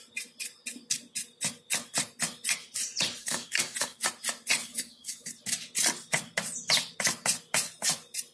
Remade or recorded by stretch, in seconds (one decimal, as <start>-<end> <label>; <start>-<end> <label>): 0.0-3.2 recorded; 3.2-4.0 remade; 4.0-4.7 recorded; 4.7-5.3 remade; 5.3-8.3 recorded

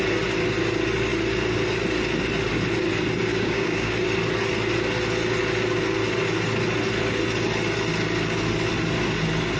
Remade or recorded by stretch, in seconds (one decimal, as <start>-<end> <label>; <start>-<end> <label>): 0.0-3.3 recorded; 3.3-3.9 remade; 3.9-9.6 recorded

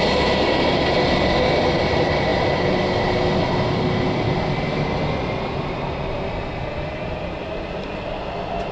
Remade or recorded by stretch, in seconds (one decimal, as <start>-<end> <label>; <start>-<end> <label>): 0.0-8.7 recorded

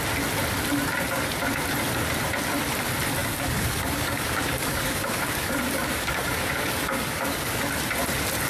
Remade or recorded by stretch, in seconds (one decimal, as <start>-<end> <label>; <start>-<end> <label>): 0.0-3.2 recorded; 3.2-7.6 remade; 7.6-8.5 recorded